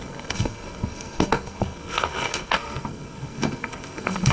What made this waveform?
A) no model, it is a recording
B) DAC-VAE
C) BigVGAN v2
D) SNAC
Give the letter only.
D